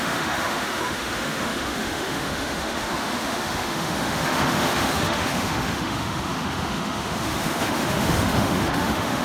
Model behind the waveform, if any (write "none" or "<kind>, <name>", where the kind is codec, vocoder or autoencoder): autoencoder, DAC-VAE